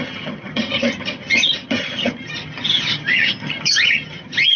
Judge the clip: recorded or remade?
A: remade